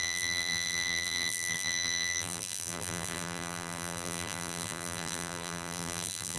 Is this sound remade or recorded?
remade